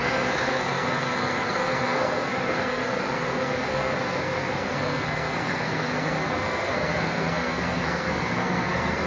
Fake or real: fake